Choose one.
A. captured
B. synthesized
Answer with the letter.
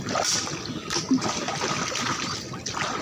A